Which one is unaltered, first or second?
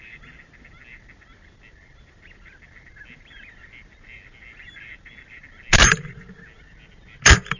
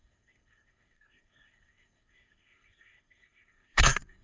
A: first